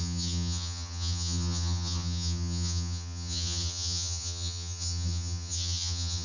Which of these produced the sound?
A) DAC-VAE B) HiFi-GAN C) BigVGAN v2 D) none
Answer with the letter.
B